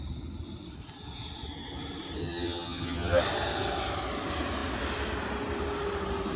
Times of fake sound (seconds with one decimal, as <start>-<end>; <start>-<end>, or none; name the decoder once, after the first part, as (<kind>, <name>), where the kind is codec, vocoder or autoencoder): 2.2-3.2 (vocoder, HiFi-GAN)